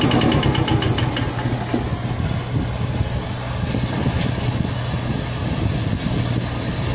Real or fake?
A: real